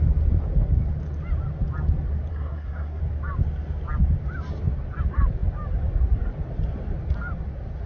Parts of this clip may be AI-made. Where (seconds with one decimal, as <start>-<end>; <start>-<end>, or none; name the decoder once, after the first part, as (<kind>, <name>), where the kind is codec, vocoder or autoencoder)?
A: 2.3-3.0 (codec, SNAC)